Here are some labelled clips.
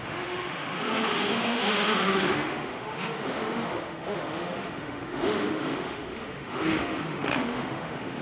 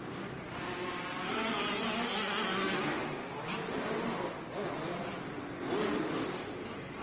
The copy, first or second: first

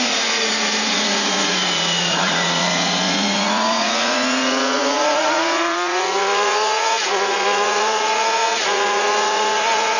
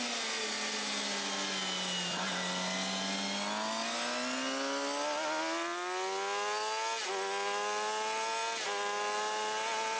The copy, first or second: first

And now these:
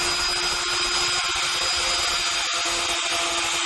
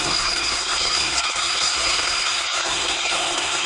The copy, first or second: second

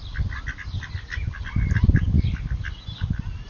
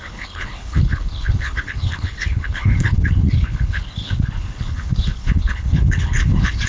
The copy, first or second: second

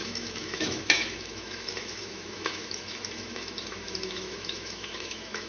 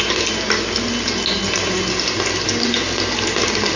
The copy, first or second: first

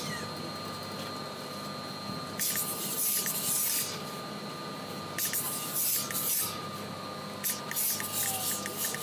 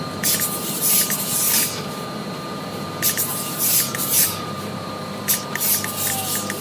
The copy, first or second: second